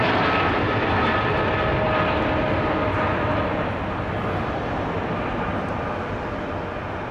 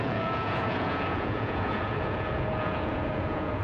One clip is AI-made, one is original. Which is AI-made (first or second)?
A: second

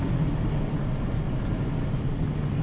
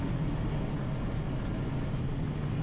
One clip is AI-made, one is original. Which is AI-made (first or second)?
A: first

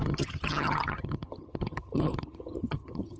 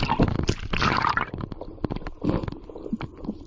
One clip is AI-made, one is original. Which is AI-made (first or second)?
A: first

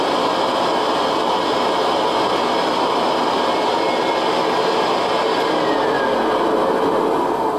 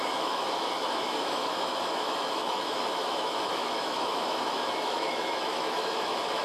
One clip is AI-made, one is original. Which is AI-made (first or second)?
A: second